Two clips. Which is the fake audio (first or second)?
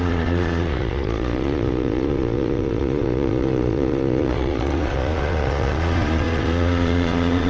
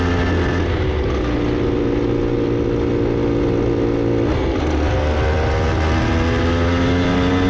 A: first